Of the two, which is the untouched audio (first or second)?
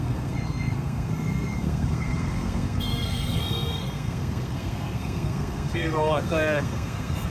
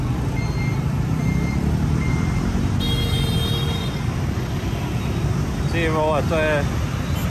second